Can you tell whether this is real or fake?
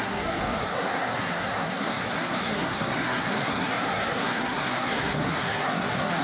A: fake